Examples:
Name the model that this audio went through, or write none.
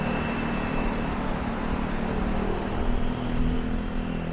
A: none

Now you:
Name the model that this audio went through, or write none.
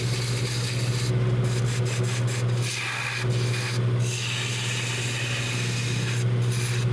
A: none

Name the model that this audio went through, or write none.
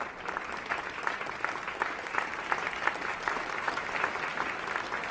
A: none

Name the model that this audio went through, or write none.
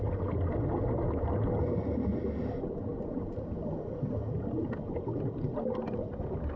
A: none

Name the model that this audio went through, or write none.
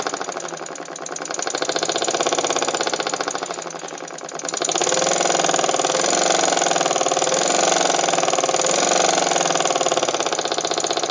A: none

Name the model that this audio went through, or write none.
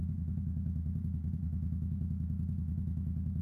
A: autoencoder, DAC-VAE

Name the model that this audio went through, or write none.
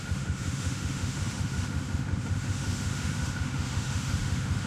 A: autoencoder, DAC-VAE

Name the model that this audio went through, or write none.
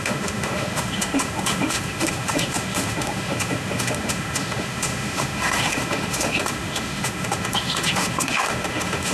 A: autoencoder, DAC-VAE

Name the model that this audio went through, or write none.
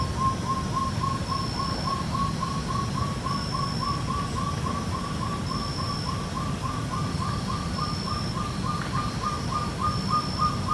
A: none